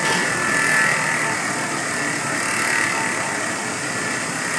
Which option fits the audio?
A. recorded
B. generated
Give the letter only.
A